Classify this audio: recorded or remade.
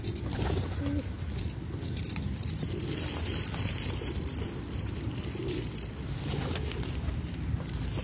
recorded